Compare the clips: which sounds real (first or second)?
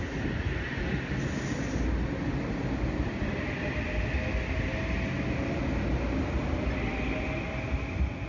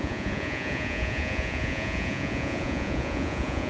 first